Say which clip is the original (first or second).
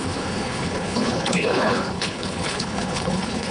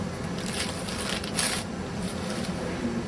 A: second